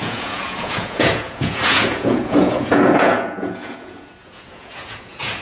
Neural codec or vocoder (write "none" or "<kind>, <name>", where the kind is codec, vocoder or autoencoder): vocoder, Vocos